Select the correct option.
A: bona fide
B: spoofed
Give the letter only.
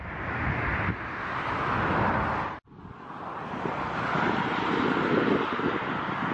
A